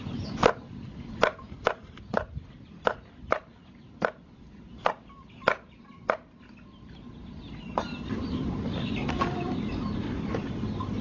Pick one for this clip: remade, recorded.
recorded